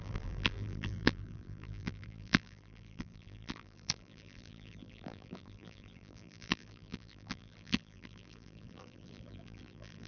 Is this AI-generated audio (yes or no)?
yes